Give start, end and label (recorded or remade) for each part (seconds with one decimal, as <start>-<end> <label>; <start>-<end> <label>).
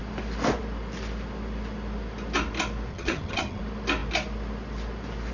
0.0-2.9 recorded; 2.9-3.6 remade; 3.6-5.3 recorded